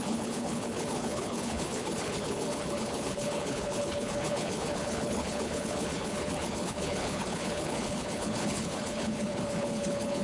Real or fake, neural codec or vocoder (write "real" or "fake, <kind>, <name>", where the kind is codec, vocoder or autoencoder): fake, codec, HILCodec